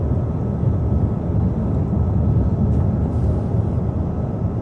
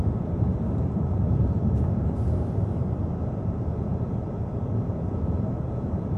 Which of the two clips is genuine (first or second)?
first